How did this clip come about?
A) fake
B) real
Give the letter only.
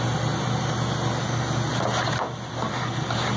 B